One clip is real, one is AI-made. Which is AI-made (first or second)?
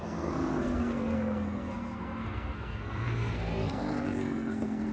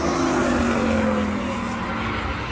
first